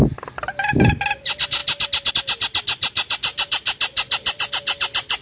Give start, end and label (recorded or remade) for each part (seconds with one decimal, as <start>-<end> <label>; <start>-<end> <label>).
0.0-5.2 recorded